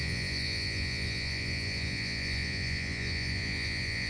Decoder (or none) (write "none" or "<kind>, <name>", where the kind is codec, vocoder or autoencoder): vocoder, Vocos